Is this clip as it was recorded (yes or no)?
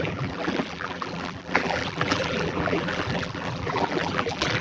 no